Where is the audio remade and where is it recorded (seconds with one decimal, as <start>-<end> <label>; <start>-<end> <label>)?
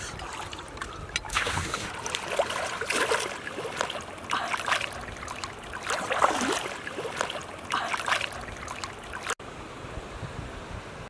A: 0.0-1.3 recorded; 1.3-1.9 remade; 1.9-11.1 recorded